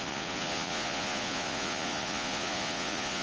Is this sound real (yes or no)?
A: no